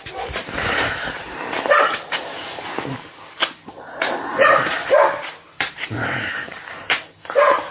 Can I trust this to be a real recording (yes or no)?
no